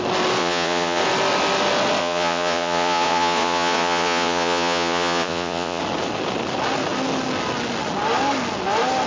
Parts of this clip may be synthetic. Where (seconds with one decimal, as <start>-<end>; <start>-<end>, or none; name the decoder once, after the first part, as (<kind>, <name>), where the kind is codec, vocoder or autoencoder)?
0.4-1.0 (vocoder, Vocos); 2.0-5.8